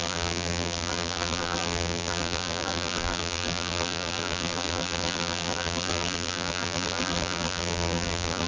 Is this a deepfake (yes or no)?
yes